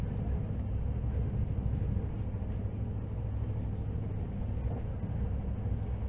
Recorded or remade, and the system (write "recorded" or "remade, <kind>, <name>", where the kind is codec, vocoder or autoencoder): recorded